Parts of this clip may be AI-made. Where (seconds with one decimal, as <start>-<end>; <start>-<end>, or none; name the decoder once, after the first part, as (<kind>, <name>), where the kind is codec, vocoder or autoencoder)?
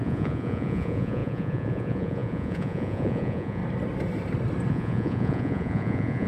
0.0-3.6 (vocoder, Vocos); 4.7-6.3